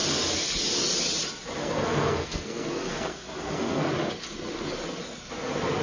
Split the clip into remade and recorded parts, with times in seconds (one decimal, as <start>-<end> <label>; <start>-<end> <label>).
0.0-1.6 recorded; 1.6-3.9 remade; 3.9-5.8 recorded